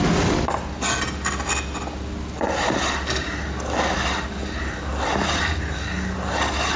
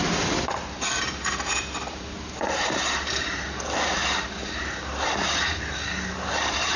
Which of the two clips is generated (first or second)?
second